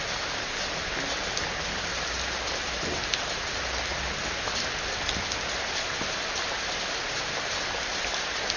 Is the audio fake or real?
real